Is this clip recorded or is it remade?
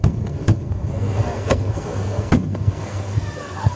remade